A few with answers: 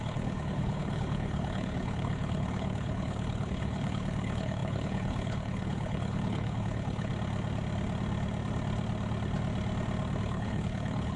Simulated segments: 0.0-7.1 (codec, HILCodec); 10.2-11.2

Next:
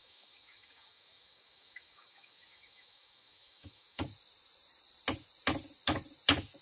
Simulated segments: 0.0-4.0 (autoencoder, DAC-VAE)

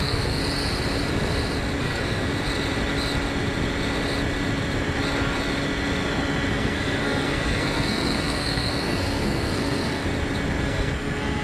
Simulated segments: 0.0-0.4 (codec, SNAC); 1.8-2.3; 6.5-10.0; 10.6-11.4

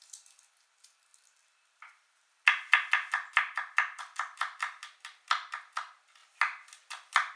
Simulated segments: none

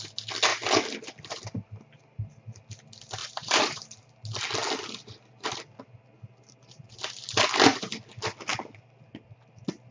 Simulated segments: 3.2-3.8 (vocoder, BigVGAN v2)

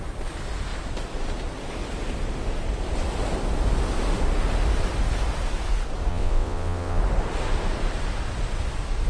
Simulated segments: 6.1-7.0 (vocoder, WaveNeXt)

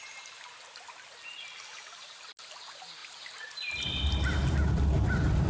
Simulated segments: none